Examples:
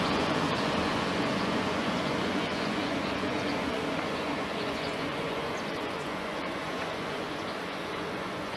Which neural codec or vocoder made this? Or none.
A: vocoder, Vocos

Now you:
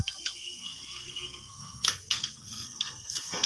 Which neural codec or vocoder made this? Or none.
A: codec, SNAC